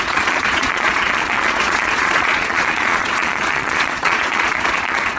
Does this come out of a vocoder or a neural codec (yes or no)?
yes